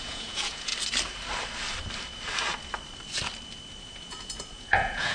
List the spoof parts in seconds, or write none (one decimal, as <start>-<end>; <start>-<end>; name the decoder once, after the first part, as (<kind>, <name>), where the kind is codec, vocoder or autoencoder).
0.0-0.7 (vocoder, Vocos); 3.8-5.1